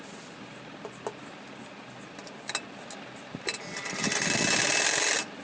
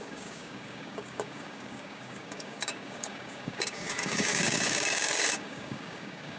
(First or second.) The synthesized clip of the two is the second